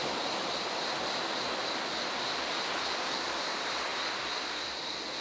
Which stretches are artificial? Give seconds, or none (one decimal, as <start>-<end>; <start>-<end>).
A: none